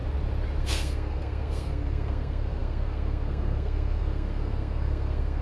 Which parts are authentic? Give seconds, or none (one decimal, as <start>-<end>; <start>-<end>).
0.0-0.6